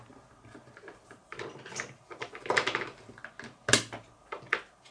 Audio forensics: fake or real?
real